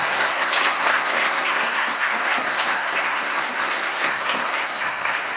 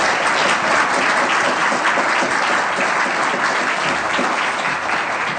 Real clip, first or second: second